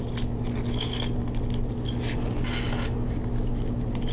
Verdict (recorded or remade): recorded